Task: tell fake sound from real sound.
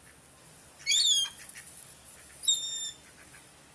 real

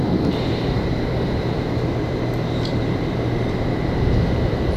fake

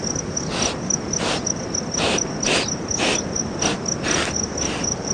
real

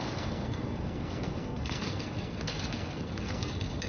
fake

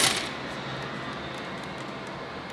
real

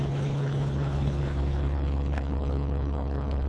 fake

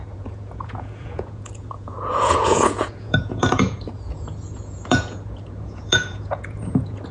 fake